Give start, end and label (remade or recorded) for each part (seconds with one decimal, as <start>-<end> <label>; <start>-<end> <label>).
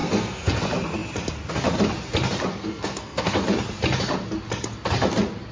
0.0-0.6 remade; 0.6-2.5 recorded; 2.5-3.4 remade; 3.4-5.5 recorded